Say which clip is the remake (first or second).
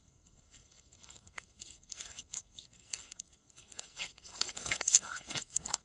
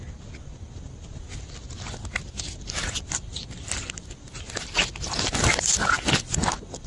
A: first